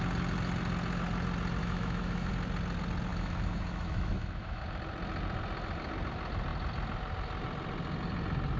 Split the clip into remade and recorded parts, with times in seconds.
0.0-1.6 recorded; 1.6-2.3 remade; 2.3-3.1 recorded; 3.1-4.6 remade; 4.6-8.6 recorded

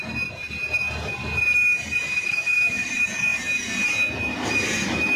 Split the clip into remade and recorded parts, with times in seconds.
0.0-2.1 recorded; 2.1-2.9 remade; 2.9-5.2 recorded

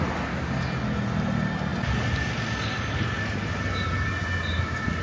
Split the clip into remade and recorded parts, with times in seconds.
0.0-5.0 recorded

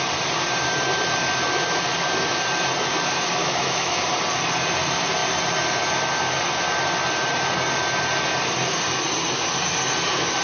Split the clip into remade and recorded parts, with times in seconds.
0.0-3.4 recorded; 3.4-4.0 remade; 4.0-10.4 recorded

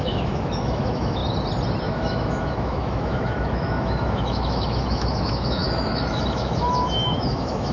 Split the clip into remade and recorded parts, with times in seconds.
0.0-1.2 remade; 1.2-1.8 recorded; 1.8-7.7 remade

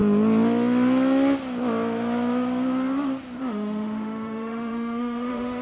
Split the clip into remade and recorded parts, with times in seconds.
0.0-3.4 recorded; 3.4-5.6 remade

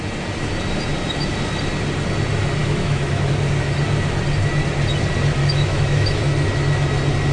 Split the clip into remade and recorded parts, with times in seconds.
0.0-2.6 recorded; 2.6-3.3 remade; 3.3-5.4 recorded; 5.4-6.2 remade; 6.2-7.3 recorded

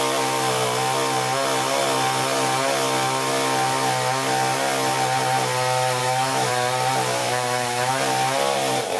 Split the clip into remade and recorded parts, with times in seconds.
0.0-6.0 recorded; 6.0-6.5 remade; 6.5-7.2 recorded; 7.2-7.9 remade; 7.9-9.0 recorded